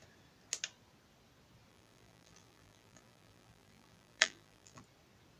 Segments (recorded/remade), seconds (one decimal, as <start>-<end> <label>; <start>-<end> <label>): 0.0-1.7 recorded; 1.7-4.8 remade; 4.8-5.4 recorded